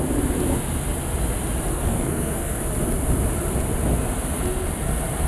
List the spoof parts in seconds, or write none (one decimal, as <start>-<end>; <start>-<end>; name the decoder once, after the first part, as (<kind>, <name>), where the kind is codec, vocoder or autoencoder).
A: 1.7-2.6 (codec, SNAC)